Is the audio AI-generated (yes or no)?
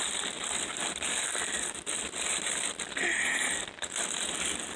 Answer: no